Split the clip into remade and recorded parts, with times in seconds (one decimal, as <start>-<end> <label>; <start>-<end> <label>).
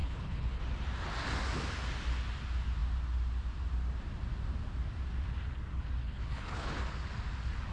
0.0-0.6 remade; 0.6-6.0 recorded; 6.0-6.7 remade; 6.7-7.7 recorded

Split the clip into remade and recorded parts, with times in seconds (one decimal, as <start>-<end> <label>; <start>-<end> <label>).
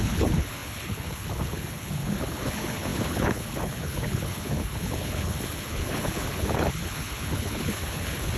0.0-8.4 remade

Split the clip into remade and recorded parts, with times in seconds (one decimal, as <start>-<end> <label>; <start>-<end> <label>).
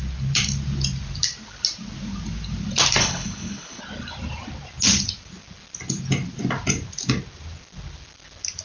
0.0-3.0 recorded; 3.0-3.8 remade; 3.8-8.6 recorded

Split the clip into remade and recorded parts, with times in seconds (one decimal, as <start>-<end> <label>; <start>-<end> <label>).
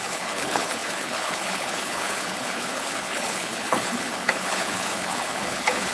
0.0-5.9 remade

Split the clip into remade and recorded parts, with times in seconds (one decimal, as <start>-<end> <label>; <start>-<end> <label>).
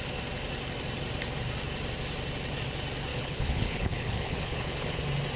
0.0-3.1 recorded; 3.1-5.0 remade; 5.0-5.4 recorded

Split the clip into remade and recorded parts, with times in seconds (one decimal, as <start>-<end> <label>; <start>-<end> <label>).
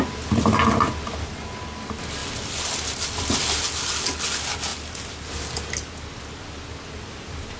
0.0-7.6 recorded